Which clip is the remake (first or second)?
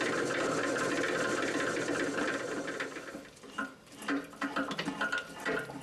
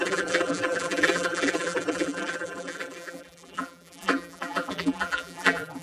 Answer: second